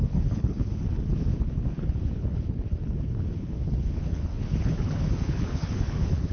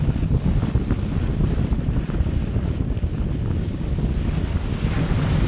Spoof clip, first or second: first